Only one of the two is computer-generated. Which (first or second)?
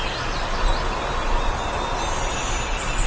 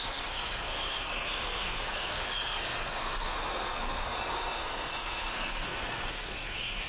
second